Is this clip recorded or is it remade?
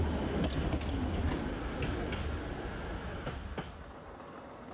recorded